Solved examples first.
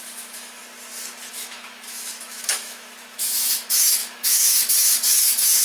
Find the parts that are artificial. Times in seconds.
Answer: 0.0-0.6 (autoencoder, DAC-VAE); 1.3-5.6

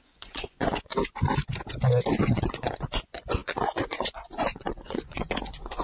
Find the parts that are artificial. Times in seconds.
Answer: 0.0-0.9 (vocoder, Vocos); 2.2-5.8